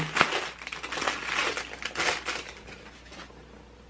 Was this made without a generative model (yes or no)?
yes